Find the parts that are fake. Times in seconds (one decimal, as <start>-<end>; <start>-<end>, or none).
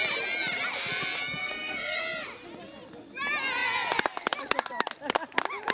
1.4-2.0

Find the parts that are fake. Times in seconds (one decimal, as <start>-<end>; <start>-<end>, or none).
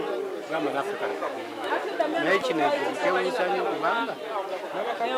1.1-1.7